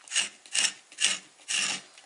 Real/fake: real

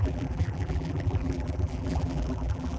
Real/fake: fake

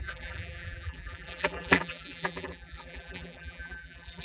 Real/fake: fake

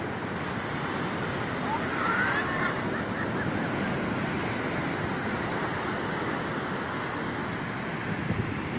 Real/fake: real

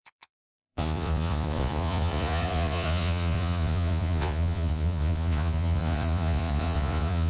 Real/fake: fake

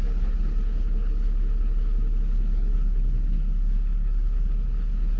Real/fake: fake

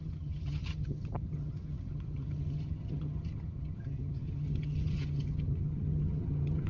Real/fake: fake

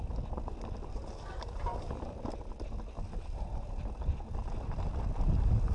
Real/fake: real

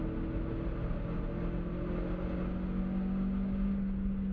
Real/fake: real